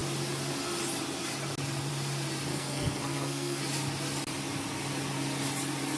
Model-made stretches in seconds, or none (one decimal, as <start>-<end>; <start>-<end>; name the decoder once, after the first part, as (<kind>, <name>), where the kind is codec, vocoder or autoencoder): 2.5-3.6 (codec, SNAC)